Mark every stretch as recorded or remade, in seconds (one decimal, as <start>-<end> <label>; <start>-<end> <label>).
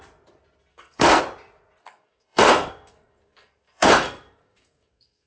0.0-0.7 recorded; 0.7-1.2 remade; 1.2-1.8 recorded; 1.8-5.3 remade